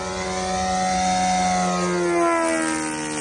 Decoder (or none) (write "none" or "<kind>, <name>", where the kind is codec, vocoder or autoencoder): none